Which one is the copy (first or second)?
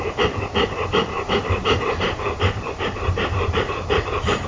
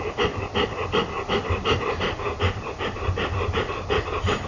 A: first